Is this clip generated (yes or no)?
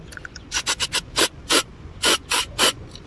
yes